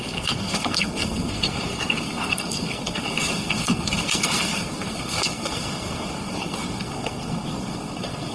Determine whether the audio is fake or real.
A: fake